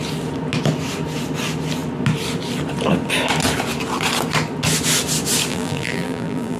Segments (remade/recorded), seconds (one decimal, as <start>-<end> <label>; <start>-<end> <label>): 0.0-5.5 recorded; 5.5-6.6 remade